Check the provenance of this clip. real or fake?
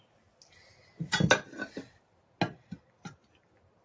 real